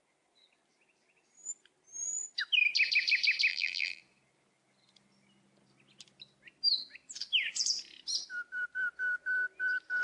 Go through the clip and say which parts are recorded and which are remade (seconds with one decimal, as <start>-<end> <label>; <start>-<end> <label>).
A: 0.0-3.5 recorded; 3.5-4.0 remade; 4.0-10.0 recorded